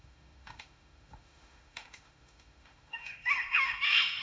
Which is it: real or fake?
fake